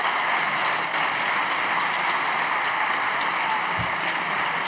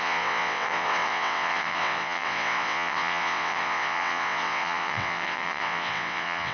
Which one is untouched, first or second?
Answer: first